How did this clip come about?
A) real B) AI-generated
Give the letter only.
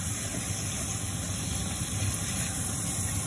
A